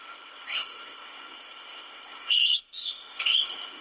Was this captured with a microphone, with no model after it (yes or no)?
no